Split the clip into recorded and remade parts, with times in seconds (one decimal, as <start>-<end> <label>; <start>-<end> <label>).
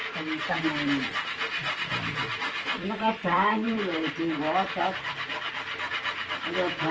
0.0-0.6 remade; 0.6-1.6 recorded; 1.6-5.7 remade; 5.7-6.9 recorded